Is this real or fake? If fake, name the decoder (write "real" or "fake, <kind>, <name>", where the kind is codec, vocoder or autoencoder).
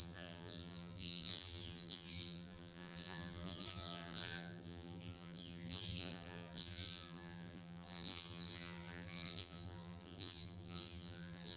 fake, vocoder, BigVGAN v2